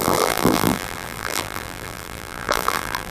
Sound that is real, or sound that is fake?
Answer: fake